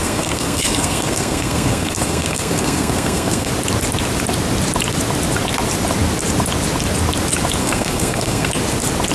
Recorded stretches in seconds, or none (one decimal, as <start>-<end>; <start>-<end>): 3.5-7.6; 8.5-9.1